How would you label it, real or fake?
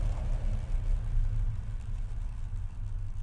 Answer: real